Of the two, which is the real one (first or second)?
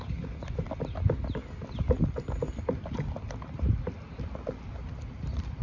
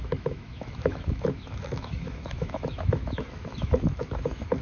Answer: first